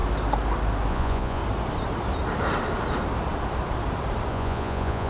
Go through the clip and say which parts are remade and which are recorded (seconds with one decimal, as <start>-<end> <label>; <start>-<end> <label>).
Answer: 0.0-0.9 recorded; 0.9-1.4 remade; 1.4-4.3 recorded; 4.3-5.1 remade